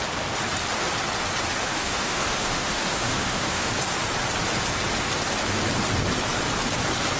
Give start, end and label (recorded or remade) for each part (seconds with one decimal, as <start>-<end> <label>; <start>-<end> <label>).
0.0-1.7 recorded; 1.7-3.7 remade; 3.7-7.2 recorded